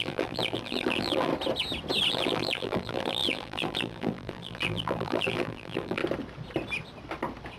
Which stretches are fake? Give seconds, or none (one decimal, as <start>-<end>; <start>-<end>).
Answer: 0.0-1.3; 2.1-6.0